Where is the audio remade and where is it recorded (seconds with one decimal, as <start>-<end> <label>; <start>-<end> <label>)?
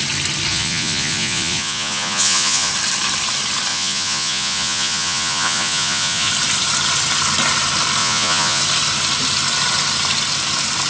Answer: 0.0-0.5 recorded; 0.5-2.7 remade; 2.7-3.7 recorded; 3.7-6.3 remade; 6.3-8.0 recorded; 8.0-8.6 remade; 8.6-10.9 recorded